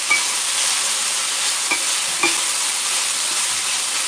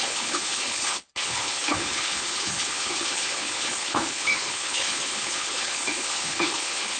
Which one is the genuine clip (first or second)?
first